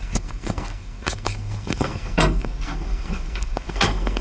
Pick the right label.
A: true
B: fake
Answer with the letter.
B